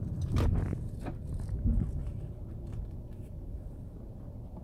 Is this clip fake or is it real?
fake